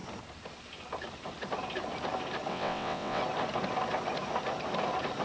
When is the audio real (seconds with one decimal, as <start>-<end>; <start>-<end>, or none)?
0.0-2.5; 3.2-5.2